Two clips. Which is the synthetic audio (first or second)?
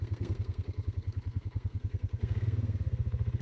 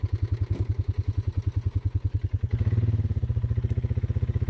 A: first